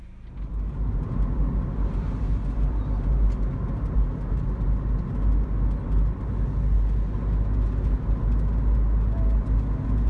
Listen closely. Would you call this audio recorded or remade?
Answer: recorded